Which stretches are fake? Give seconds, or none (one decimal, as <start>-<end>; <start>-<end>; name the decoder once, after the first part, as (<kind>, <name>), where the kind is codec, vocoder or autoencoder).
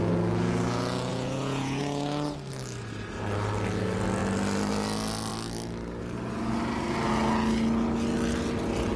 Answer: 1.1-1.8 (vocoder, Vocos)